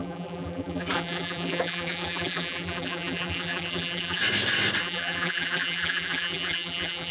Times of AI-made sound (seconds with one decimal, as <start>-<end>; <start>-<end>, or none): 0.0-4.2; 4.8-7.1